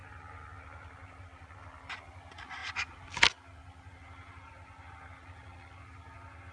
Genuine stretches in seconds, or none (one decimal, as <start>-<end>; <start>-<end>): 0.0-6.5